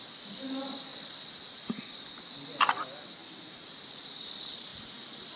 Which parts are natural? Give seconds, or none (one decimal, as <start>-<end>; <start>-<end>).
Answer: 0.0-0.9; 1.9-3.2; 3.7-4.7